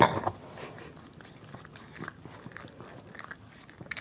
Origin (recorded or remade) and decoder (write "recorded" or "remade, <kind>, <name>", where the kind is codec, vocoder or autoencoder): recorded